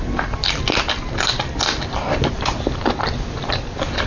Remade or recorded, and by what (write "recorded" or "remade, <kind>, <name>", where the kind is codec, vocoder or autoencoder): recorded